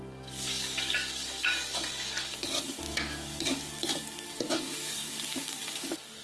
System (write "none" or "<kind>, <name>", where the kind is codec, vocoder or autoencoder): codec, DAC